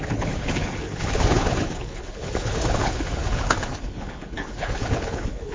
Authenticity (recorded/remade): remade